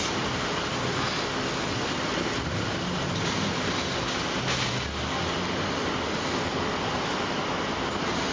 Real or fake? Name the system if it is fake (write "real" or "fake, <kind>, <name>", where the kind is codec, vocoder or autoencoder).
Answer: real